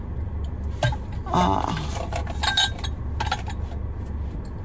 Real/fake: real